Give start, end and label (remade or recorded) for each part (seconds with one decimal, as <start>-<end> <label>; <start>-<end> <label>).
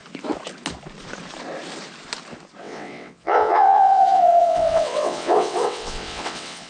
0.0-2.6 recorded; 2.6-6.7 remade